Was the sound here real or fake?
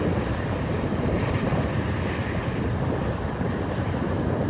real